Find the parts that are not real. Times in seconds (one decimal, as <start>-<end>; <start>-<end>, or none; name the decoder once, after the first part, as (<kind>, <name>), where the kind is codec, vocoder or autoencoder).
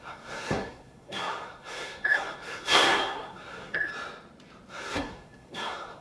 0.0-3.9 (codec, SNAC); 4.7-6.0